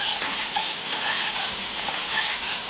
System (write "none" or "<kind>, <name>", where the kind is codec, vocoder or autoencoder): autoencoder, DAC-VAE